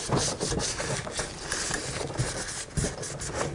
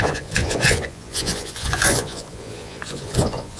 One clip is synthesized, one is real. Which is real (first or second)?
first